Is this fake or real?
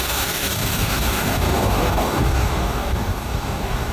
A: fake